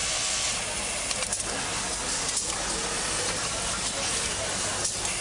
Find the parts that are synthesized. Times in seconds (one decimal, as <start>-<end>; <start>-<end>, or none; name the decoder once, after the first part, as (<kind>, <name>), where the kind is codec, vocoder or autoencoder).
none